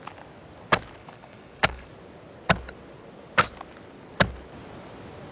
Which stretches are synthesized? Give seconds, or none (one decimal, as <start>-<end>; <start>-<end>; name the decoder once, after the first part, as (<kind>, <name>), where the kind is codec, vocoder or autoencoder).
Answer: 1.0-1.9 (codec, DAC)